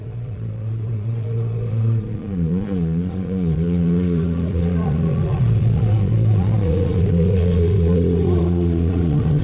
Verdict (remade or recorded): remade